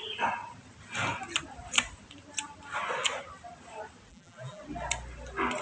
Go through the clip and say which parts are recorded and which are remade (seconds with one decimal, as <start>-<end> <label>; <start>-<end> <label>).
0.0-4.1 recorded; 4.1-4.6 remade; 4.6-5.6 recorded